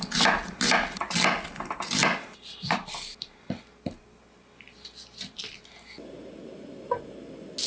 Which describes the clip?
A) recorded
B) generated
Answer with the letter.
A